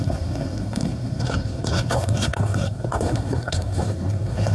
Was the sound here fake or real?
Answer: fake